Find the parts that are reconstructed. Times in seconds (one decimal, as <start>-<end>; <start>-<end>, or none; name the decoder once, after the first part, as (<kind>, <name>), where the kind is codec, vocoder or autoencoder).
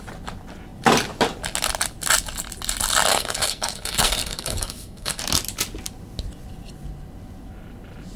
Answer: 3.1-5.2 (codec, SNAC)